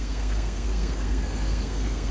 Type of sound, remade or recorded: remade